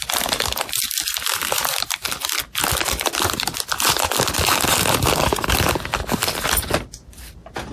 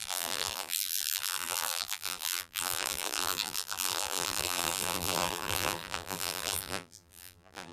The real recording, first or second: first